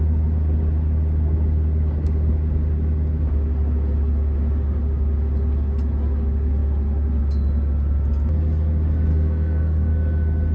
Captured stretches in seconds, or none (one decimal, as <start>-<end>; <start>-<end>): 0.0-9.1; 9.9-10.5